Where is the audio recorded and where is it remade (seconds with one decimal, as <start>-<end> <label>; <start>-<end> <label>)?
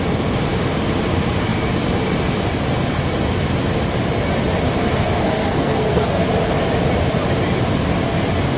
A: 0.0-4.8 recorded; 4.8-6.2 remade; 6.2-8.6 recorded